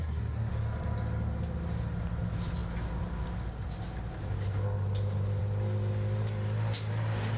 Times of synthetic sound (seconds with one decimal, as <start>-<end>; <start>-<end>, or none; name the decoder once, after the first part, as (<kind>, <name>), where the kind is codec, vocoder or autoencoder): 0.0-0.5 (codec, SNAC)

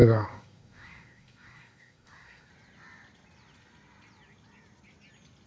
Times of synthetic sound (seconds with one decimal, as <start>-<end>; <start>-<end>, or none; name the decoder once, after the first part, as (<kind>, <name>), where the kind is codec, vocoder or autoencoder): 0.0-2.5 (codec, SNAC)

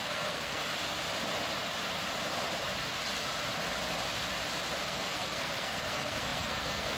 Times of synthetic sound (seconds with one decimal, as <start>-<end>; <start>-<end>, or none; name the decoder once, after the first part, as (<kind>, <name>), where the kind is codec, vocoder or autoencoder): 0.0-0.6 (codec, SNAC); 4.8-7.0

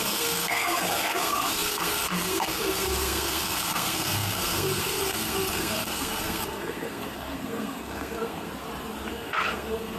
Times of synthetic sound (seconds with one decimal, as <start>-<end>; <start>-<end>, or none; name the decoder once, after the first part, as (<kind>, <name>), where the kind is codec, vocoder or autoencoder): 0.0-8.5 (codec, SNAC); 9.1-10.0